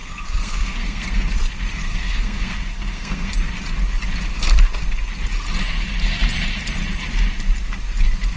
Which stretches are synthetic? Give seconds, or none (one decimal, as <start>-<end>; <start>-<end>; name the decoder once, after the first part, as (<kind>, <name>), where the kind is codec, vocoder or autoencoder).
0.0-1.3 (codec, SNAC); 1.8-3.3